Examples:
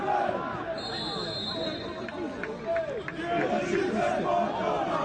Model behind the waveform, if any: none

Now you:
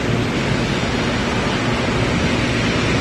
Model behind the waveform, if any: none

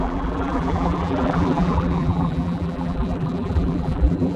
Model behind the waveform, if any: vocoder, BigVGAN v2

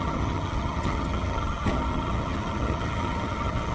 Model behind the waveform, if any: vocoder, HiFi-GAN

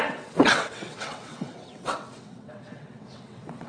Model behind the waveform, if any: vocoder, WaveNeXt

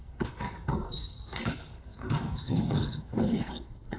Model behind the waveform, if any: codec, SNAC